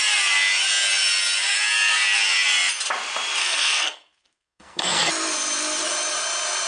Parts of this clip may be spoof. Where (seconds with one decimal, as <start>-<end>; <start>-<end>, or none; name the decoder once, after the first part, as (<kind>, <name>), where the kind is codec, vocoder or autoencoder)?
3.4-5.1 (codec, SNAC)